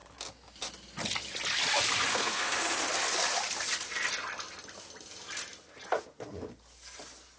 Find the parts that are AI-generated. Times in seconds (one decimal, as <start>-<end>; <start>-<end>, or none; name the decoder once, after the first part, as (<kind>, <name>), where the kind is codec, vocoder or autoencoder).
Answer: 2.1-2.7 (codec, SNAC)